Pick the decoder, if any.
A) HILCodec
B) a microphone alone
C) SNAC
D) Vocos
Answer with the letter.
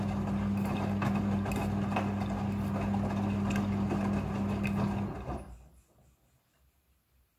B